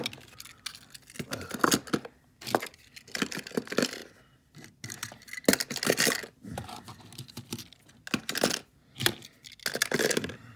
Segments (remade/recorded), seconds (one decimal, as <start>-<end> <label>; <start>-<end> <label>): 0.0-10.6 recorded